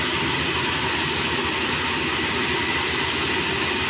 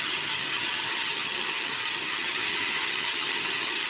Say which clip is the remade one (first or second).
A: second